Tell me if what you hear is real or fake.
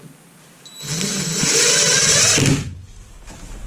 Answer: real